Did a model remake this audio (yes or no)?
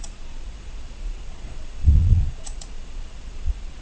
yes